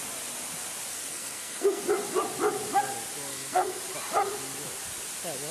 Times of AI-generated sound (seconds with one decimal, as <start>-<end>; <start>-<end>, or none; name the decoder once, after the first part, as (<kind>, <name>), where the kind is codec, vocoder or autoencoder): 0.9-1.8 (codec, SNAC); 3.3-3.8